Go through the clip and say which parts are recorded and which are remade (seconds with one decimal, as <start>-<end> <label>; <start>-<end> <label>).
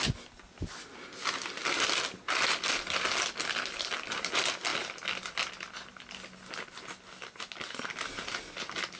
0.0-9.0 recorded